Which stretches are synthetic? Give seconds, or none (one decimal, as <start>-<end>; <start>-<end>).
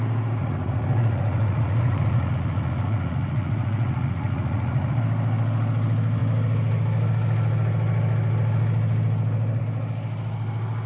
0.4-5.0